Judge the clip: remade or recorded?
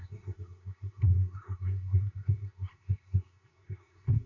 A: remade